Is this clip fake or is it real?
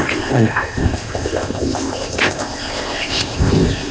fake